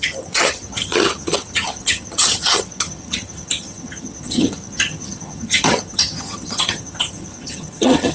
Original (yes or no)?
no